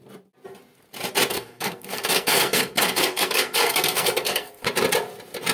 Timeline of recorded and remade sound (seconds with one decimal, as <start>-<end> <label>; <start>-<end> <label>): 0.0-1.3 recorded; 1.3-4.6 remade; 4.6-5.5 recorded